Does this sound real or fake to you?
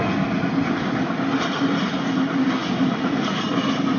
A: real